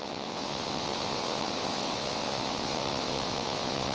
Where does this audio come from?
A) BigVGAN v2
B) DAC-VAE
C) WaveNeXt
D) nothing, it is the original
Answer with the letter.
C